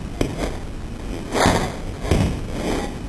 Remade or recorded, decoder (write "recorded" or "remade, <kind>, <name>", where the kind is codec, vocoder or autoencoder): recorded